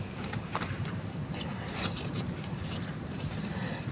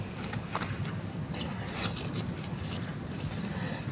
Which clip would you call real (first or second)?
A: second